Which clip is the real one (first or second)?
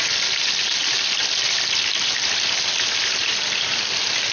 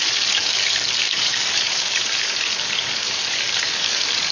first